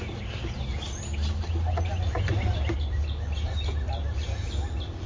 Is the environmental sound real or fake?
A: real